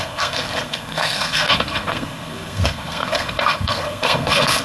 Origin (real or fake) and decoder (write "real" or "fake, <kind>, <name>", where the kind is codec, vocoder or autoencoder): fake, codec, SNAC